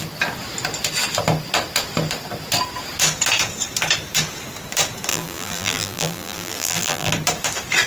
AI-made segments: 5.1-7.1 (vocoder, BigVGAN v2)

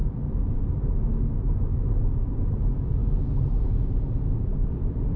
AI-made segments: 0.0-1.1 (vocoder, BigVGAN v2); 4.5-5.2

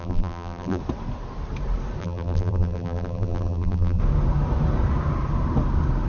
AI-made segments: 0.0-0.8 (vocoder, BigVGAN v2); 2.0-4.0